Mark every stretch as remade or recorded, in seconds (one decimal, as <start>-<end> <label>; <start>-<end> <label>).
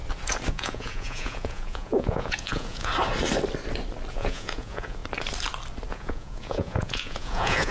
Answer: 0.0-0.5 recorded; 0.5-2.9 remade; 2.9-4.1 recorded; 4.1-5.0 remade; 5.0-5.9 recorded; 5.9-7.7 remade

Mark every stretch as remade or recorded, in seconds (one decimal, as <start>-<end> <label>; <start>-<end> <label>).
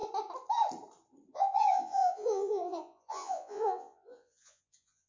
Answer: 0.0-1.3 recorded; 1.3-5.1 remade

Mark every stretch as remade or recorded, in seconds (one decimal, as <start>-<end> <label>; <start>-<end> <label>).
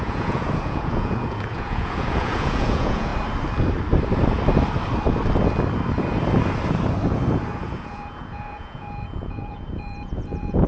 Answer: 0.0-3.1 remade; 3.1-7.6 recorded; 7.6-10.7 remade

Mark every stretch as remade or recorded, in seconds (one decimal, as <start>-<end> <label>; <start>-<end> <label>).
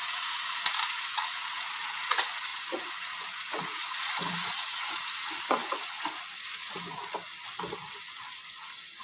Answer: 0.0-7.0 remade; 7.0-7.9 recorded; 7.9-9.0 remade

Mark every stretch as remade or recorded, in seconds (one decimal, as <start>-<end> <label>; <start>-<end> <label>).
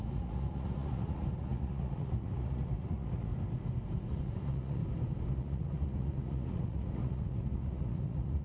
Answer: 0.0-3.3 remade; 3.3-4.1 recorded; 4.1-4.8 remade; 4.8-5.3 recorded; 5.3-8.4 remade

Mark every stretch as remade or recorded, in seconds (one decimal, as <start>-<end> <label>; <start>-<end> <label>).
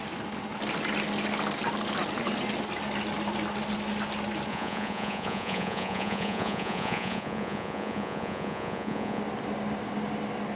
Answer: 0.0-4.5 recorded; 4.5-9.2 remade; 9.2-10.6 recorded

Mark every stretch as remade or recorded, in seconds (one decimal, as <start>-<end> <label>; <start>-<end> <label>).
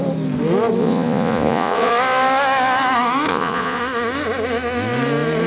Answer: 0.0-0.8 recorded; 0.8-1.9 remade; 1.9-3.3 recorded; 3.3-3.8 remade; 3.8-5.5 recorded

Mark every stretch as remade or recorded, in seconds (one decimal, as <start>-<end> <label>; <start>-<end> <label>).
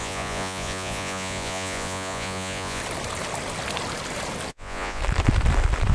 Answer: 0.0-2.8 remade; 2.8-4.5 recorded; 4.5-5.0 remade; 5.0-5.9 recorded